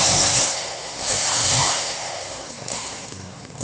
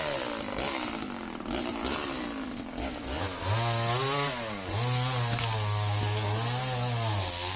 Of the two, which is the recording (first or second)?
second